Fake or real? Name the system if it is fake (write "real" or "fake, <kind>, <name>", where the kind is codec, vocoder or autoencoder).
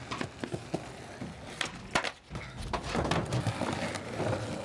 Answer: real